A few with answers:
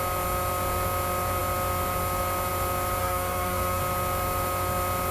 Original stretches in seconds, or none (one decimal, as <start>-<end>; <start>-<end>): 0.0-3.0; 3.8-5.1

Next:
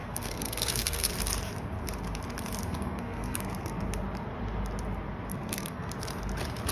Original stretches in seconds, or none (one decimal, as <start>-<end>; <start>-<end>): 1.1-2.7; 3.8-5.3; 5.9-6.7

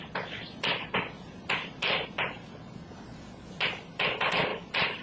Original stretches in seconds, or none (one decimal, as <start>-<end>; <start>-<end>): 0.0-5.0

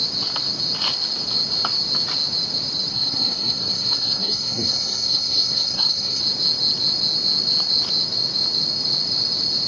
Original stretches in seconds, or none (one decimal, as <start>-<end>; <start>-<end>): 0.0-2.9; 6.2-9.7

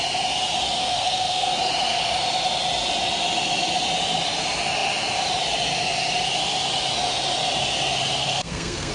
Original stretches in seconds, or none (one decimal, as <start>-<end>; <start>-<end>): 0.0-0.8; 1.5-8.2